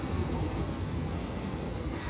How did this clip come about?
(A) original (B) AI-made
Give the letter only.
B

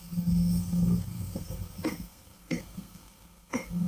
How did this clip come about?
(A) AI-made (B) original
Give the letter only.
A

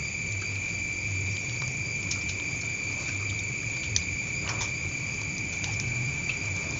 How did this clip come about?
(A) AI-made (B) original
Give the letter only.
B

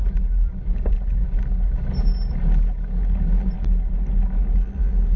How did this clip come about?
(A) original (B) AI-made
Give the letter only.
A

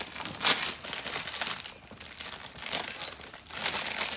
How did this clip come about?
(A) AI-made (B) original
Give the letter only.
B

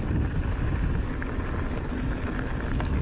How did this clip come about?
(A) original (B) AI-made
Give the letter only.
A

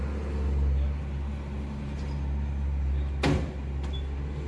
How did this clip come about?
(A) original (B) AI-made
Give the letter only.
A